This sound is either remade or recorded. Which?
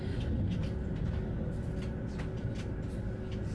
recorded